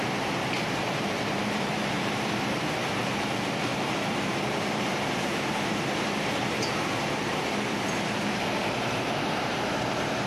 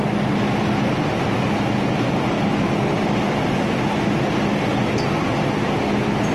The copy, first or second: first